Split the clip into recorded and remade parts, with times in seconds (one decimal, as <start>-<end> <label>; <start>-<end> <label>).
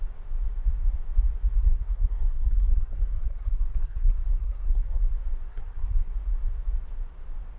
0.0-1.6 recorded; 1.6-5.1 remade; 5.1-5.5 recorded; 5.5-6.1 remade; 6.1-7.6 recorded